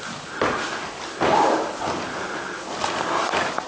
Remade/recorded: recorded